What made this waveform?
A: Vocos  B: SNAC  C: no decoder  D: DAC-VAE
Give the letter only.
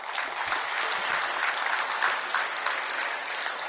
C